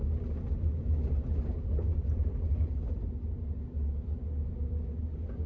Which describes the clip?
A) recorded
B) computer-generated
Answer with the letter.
A